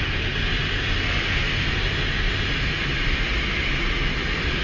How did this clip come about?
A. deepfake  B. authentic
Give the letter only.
B